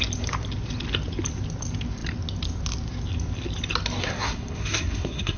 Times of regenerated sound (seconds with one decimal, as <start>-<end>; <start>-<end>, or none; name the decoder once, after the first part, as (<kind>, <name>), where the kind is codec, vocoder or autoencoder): 4.0-5.4 (codec, SNAC)